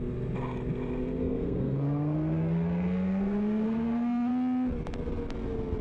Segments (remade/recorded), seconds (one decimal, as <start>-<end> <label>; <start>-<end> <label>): 0.0-1.2 recorded; 1.2-4.3 remade; 4.3-5.8 recorded